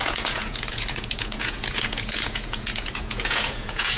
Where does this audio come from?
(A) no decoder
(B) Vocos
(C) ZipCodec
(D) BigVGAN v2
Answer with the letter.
B